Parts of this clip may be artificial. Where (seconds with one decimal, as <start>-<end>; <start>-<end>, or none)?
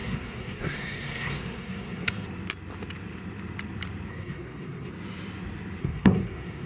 0.0-2.1; 4.1-4.9; 5.8-6.7